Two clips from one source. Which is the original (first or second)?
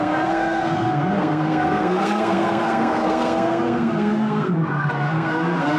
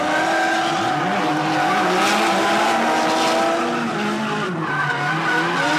second